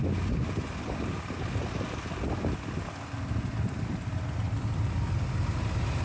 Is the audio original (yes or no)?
yes